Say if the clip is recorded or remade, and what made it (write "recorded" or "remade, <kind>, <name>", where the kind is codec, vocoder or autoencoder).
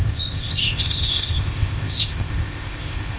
remade, codec, ZipCodec